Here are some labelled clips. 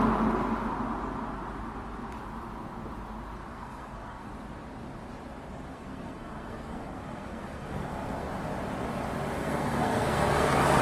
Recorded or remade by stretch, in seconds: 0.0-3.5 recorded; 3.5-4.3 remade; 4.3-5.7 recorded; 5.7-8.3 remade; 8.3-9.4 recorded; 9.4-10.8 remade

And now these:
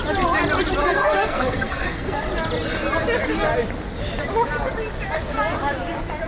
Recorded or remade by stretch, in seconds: 0.0-0.8 recorded; 0.8-2.3 remade; 2.3-6.3 recorded

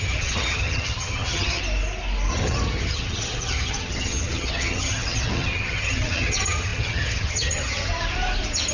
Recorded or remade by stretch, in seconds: 0.0-1.6 remade; 1.6-2.3 recorded; 2.3-7.9 remade; 7.9-8.7 recorded

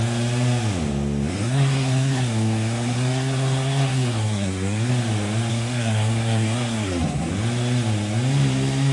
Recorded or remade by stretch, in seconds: 0.0-1.3 recorded; 1.3-4.9 remade; 4.9-5.5 recorded; 5.5-7.3 remade; 7.3-8.9 recorded

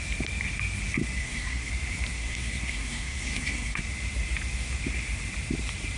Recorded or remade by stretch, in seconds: 0.0-1.2 recorded; 1.2-1.7 remade; 1.7-2.2 recorded; 2.2-3.8 remade; 3.8-6.0 recorded

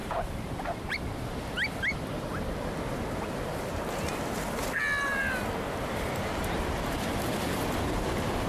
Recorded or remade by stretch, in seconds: 0.0-8.5 recorded

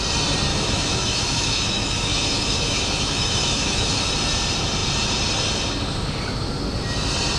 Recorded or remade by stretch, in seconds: 0.0-0.5 recorded; 0.5-4.0 remade; 4.0-7.4 recorded

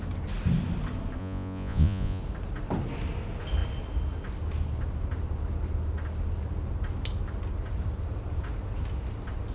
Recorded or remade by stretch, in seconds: 0.0-1.2 recorded; 1.2-2.2 remade; 2.2-9.5 recorded